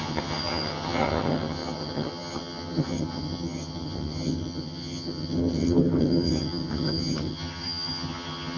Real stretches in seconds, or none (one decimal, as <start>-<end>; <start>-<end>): none